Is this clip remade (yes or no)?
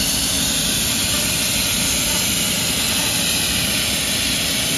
no